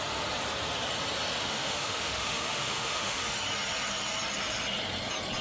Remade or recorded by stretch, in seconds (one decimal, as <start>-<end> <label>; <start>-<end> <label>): 0.0-1.4 recorded; 1.4-3.2 remade; 3.2-5.4 recorded